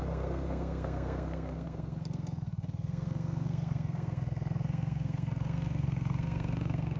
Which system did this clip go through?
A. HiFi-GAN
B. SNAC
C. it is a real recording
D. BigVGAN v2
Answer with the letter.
B